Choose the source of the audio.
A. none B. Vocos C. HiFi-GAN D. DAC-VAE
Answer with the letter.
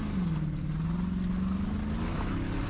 A